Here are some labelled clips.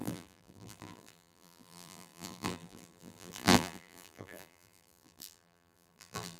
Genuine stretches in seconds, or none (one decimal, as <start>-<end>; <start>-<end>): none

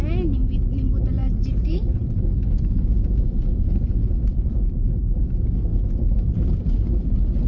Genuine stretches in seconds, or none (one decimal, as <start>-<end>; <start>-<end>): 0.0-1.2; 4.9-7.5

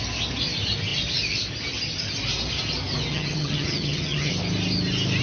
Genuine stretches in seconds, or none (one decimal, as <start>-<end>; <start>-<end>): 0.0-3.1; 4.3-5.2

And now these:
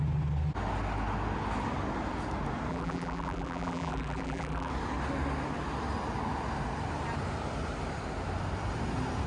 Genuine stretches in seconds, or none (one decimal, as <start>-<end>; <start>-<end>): 0.0-2.7; 4.7-9.3

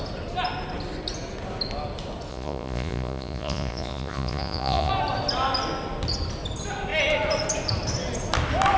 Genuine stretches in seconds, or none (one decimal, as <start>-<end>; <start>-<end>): 0.0-2.3; 4.9-8.8

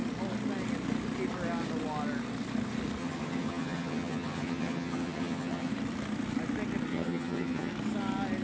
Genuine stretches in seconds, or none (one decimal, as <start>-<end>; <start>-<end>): 0.0-3.0; 5.7-6.9; 7.7-8.4

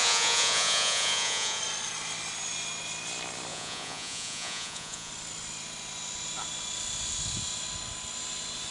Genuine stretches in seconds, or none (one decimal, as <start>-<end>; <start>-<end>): 1.6-3.5; 5.1-8.7

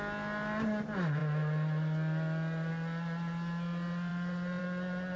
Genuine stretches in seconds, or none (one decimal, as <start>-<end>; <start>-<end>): 0.0-5.2